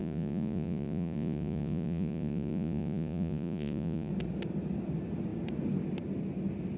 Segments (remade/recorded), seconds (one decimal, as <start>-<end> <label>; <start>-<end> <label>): 0.0-4.1 remade; 4.1-6.8 recorded